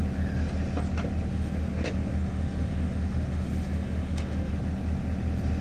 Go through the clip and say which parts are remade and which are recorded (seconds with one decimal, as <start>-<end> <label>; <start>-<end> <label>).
0.0-1.3 recorded; 1.3-4.5 remade; 4.5-5.6 recorded